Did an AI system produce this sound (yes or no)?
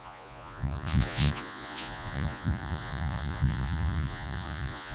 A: yes